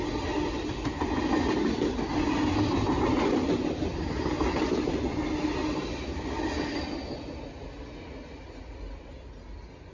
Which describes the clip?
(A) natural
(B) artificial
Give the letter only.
A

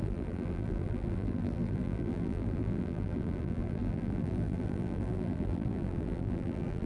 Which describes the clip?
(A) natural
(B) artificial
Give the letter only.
B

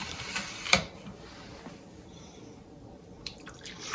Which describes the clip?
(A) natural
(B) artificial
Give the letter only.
B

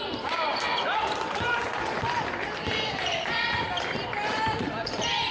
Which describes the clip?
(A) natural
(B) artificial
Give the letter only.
B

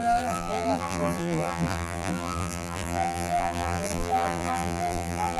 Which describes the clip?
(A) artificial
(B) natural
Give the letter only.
A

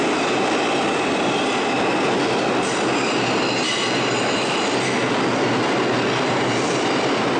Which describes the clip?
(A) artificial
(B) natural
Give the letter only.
B